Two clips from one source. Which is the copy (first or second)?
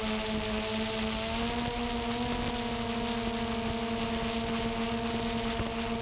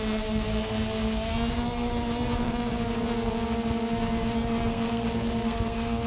second